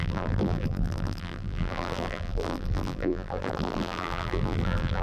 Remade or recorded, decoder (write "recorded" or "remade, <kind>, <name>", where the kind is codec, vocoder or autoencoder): remade, vocoder, BigVGAN v2